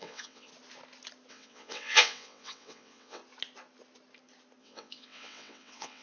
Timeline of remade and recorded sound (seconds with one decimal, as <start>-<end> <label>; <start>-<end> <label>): 0.0-0.5 remade; 0.5-1.3 recorded; 1.3-3.2 remade; 3.2-4.6 recorded; 4.6-6.0 remade